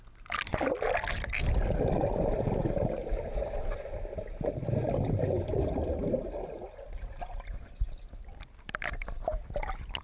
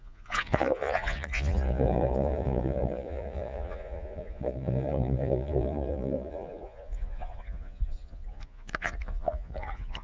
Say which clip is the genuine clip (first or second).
first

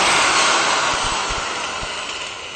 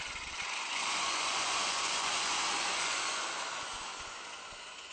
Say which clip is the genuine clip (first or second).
first